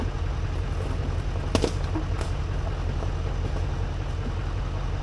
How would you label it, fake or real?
real